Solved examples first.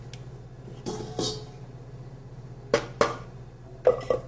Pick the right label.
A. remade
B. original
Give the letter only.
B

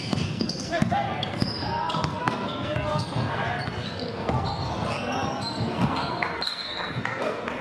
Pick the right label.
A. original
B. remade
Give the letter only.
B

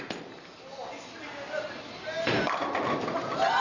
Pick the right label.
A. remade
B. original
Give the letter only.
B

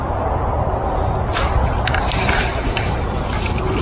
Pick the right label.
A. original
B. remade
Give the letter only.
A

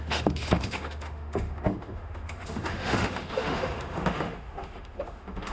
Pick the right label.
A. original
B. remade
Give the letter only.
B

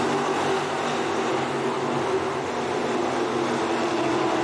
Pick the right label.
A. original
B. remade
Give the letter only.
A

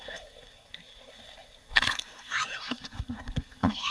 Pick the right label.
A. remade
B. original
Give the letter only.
A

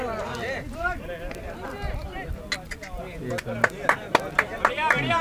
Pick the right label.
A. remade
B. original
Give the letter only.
B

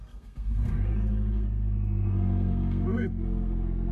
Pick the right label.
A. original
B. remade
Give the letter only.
B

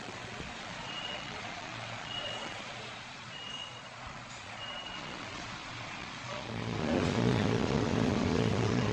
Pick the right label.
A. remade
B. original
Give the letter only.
A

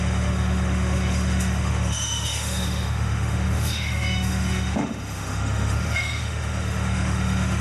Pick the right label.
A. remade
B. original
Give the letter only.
A